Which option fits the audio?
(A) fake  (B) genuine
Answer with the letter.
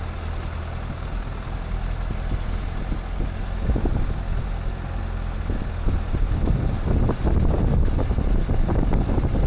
B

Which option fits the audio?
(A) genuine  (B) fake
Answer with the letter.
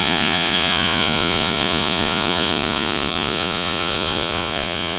B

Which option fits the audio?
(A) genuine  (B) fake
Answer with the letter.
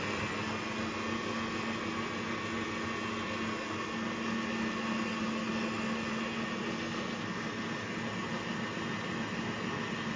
A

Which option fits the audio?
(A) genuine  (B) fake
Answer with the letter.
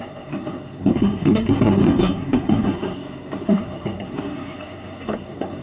B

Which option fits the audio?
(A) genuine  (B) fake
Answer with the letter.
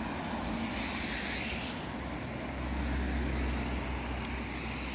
A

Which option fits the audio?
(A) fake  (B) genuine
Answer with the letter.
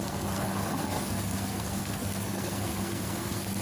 A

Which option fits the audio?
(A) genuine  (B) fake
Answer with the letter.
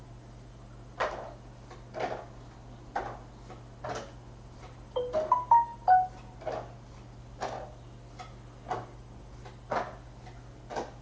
A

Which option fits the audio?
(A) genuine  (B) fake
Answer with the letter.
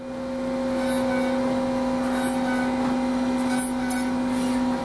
A